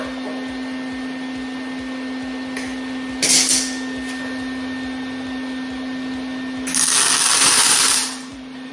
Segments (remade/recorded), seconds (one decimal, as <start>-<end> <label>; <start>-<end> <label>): 0.0-7.3 recorded; 7.3-8.7 remade